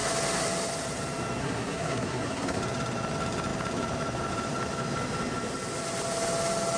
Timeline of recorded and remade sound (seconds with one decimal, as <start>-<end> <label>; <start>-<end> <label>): 0.0-1.4 recorded; 1.4-2.6 remade; 2.6-6.8 recorded